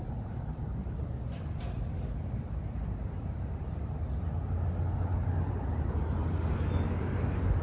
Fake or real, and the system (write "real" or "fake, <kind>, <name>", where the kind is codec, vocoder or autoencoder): real